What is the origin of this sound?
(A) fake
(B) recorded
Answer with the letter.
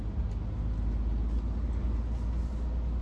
B